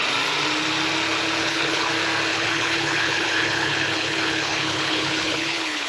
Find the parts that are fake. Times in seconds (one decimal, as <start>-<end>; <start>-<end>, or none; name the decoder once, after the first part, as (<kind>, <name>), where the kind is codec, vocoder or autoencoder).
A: 1.4-1.9 (codec, HILCodec); 2.3-5.9